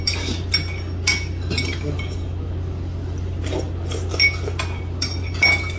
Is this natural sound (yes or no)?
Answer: yes